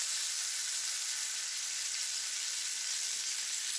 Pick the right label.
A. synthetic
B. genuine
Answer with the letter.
B